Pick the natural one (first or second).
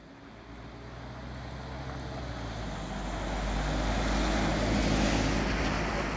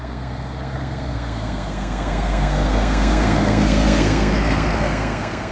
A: first